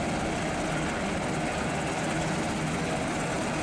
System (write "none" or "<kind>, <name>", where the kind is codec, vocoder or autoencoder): none